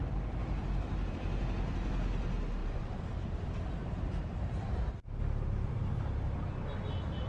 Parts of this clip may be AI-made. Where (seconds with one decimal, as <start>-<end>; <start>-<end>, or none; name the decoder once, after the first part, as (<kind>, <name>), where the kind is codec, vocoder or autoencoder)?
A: 2.6-3.4 (vocoder, BigVGAN v2); 3.8-5.9